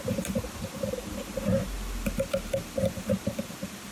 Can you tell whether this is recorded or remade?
recorded